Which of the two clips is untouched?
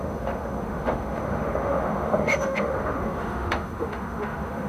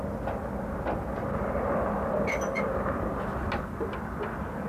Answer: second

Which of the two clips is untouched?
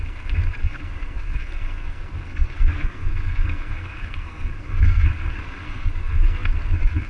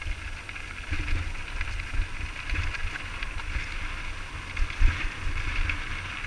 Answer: second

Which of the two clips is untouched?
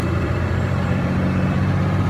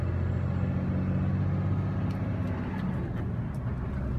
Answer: second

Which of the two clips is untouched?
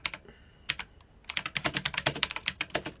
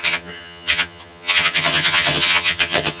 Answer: first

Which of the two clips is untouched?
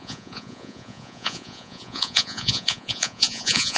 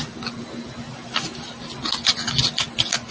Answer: second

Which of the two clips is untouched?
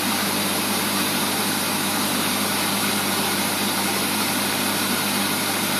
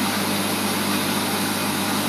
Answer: second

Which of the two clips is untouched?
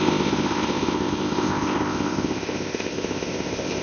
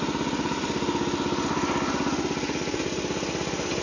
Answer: second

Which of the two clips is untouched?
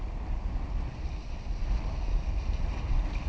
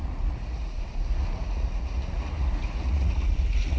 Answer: first